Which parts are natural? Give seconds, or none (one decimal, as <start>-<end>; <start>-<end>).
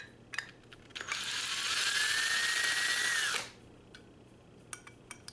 0.0-5.3